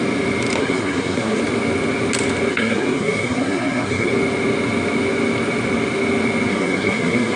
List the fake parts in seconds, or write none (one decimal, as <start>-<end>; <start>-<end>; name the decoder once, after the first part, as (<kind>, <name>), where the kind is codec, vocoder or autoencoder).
0.6-1.4 (codec, SNAC); 2.5-4.1; 6.5-7.4